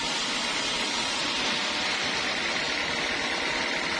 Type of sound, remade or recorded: recorded